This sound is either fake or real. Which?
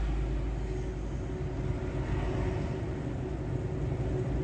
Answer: real